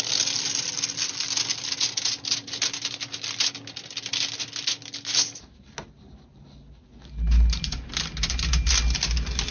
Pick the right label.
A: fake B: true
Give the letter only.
B